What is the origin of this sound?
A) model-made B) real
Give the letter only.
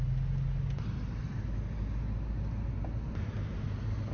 B